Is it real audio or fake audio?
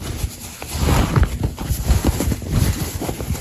real